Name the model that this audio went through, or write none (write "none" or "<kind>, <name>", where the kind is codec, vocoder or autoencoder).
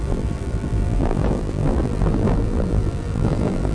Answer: vocoder, BigVGAN v2